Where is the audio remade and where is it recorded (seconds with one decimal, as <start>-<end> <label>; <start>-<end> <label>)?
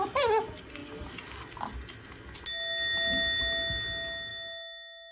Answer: 0.0-5.1 recorded